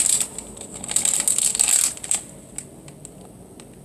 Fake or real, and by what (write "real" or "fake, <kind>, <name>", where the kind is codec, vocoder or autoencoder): real